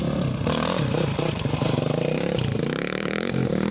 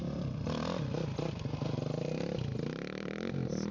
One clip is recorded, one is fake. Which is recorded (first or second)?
second